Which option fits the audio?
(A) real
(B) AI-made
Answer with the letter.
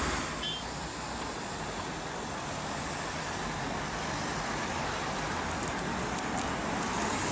A